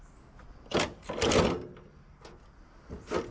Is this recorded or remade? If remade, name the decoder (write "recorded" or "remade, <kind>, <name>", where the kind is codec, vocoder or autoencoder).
recorded